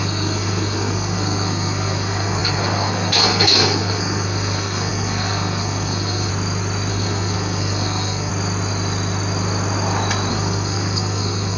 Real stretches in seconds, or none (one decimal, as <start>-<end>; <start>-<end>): 6.3-6.9; 8.3-10.3